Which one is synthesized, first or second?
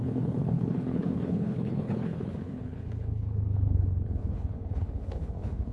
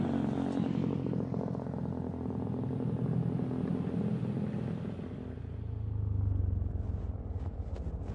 first